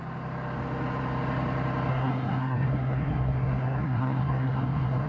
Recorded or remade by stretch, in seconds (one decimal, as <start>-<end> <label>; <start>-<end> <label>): 0.0-1.9 recorded; 1.9-5.1 remade